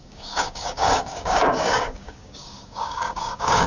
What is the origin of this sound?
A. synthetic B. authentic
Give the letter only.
A